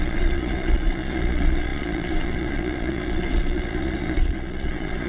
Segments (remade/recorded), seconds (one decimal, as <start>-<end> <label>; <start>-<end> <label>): 0.0-5.1 remade